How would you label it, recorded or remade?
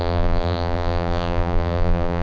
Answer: remade